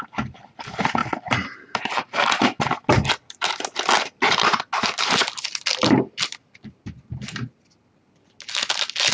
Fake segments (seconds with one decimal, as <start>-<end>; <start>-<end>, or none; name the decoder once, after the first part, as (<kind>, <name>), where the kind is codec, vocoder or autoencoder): none